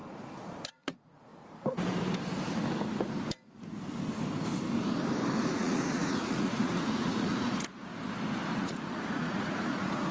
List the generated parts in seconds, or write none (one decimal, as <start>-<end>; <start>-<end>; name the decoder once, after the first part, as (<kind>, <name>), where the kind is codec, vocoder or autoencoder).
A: 0.7-1.3 (vocoder, Vocos); 5.5-7.9; 8.6-10.1

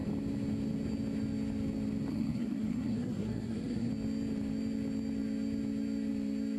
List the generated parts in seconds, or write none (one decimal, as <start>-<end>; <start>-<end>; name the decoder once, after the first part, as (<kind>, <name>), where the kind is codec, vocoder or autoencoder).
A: 2.1-3.9 (codec, SNAC)

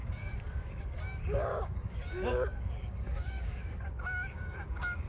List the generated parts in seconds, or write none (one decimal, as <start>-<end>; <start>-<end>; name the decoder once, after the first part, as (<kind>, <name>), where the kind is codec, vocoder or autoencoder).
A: 0.0-5.1 (codec, DAC)

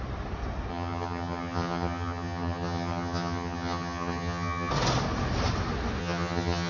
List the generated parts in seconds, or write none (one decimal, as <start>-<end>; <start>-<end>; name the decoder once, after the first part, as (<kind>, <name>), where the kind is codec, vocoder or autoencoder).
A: 0.7-4.7 (vocoder, HiFi-GAN); 6.0-6.7

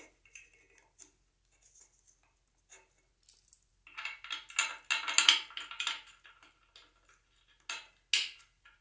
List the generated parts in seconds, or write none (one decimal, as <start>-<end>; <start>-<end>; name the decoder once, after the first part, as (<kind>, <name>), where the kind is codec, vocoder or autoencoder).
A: none

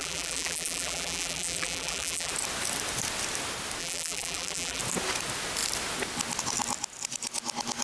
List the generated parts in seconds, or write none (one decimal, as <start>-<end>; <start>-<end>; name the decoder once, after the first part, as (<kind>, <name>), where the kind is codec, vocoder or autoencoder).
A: 0.0-2.3 (vocoder, BigVGAN v2); 3.8-4.8

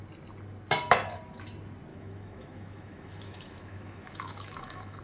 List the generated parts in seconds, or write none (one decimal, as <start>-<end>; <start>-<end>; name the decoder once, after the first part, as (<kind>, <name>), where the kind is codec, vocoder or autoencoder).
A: 1.9-5.0 (autoencoder, DAC-VAE)